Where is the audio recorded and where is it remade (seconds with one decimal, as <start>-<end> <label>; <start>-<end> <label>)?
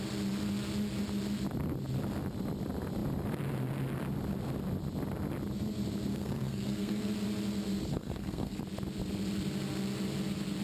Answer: 0.0-6.1 recorded; 6.1-7.1 remade; 7.1-7.9 recorded; 7.9-8.6 remade; 8.6-10.6 recorded